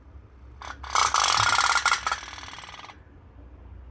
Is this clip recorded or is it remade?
recorded